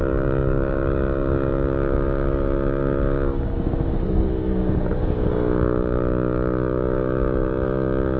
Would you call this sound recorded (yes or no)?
no